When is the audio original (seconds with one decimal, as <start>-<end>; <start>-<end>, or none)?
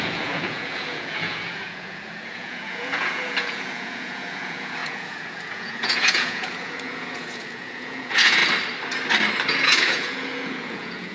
8.4-9.5